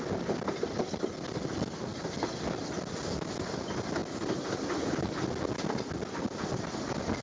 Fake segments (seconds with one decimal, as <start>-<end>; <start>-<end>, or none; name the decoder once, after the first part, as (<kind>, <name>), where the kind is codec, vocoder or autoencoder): none

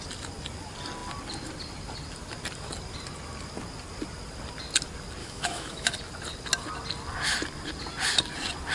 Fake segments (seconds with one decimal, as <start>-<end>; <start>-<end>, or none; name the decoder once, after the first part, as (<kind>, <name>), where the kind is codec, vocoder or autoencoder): 5.2-5.9 (autoencoder, DAC-VAE)

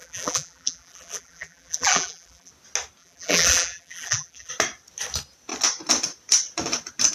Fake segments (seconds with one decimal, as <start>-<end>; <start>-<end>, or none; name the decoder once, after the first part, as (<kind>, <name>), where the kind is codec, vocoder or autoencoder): 0.0-2.5 (vocoder, BigVGAN v2); 3.0-4.5

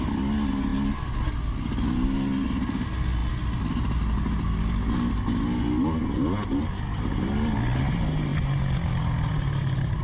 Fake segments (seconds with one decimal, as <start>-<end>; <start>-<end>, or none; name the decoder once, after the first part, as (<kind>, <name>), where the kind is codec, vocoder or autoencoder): none